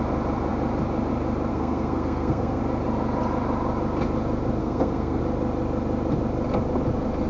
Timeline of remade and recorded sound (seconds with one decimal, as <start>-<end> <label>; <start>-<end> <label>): 0.0-1.5 recorded; 1.5-2.6 remade; 2.6-4.6 recorded; 4.6-5.2 remade; 5.2-7.3 recorded